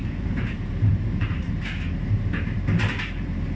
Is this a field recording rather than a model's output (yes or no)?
no